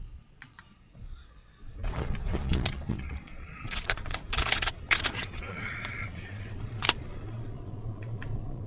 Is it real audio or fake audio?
fake